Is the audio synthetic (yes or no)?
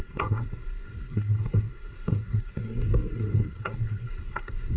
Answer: yes